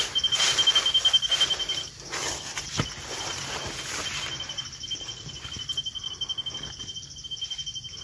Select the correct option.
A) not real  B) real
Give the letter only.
B